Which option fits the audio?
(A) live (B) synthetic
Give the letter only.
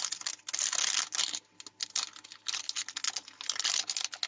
A